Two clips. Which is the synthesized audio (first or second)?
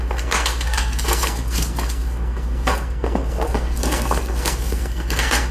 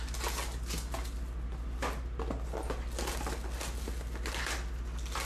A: first